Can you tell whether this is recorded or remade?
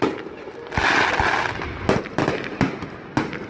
recorded